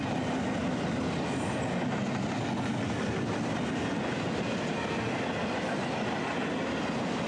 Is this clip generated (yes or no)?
no